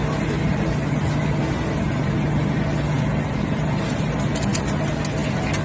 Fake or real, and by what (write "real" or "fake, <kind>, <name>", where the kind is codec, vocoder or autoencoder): real